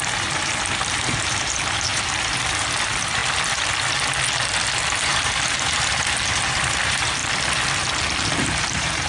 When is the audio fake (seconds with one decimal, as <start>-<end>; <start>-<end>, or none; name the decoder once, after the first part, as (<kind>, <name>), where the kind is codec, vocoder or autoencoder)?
0.0-3.2 (vocoder, BigVGAN v2); 4.9-7.2; 8.4-9.1